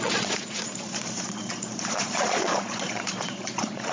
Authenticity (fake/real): fake